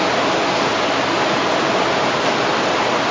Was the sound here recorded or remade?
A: recorded